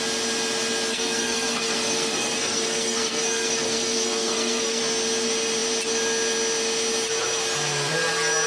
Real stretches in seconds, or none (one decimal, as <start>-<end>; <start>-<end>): 0.0-0.9; 4.8-8.5